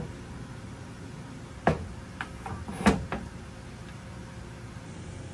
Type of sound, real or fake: real